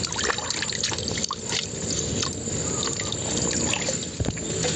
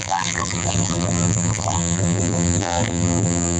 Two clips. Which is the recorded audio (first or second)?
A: first